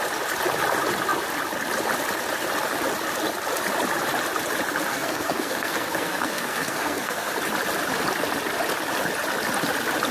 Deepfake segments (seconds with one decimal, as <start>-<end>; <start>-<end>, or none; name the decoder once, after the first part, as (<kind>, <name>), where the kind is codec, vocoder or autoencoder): 4.9-7.3 (codec, SNAC)